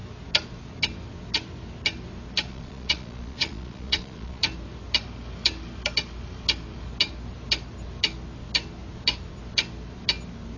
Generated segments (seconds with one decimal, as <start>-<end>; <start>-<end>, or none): 2.5-4.4